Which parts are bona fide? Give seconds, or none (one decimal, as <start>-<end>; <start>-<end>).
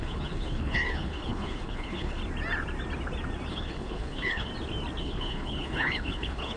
2.2-3.5; 4.5-5.0